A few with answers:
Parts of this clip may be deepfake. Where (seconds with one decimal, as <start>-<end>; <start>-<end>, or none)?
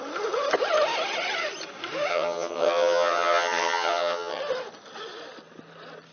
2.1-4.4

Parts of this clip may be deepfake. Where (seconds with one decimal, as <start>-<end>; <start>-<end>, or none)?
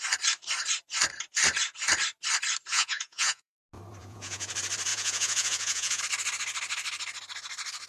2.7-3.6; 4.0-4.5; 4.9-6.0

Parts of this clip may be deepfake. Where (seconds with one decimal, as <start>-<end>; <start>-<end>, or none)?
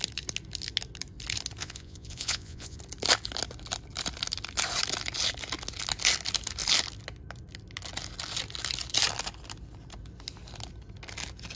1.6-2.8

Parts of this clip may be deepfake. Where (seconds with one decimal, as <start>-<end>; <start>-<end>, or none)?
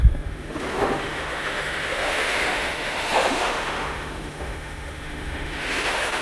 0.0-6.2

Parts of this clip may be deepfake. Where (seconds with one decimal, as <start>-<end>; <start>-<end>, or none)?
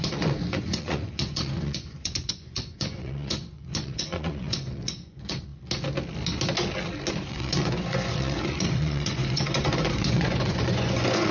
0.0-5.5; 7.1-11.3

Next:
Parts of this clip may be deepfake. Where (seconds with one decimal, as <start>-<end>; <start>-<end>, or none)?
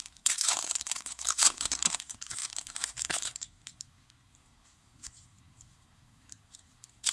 0.0-7.1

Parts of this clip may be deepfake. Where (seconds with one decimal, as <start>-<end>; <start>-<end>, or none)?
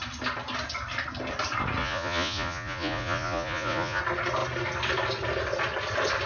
1.8-4.0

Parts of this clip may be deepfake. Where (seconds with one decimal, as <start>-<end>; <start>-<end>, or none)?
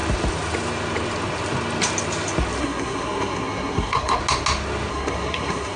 2.6-4.2; 4.9-5.8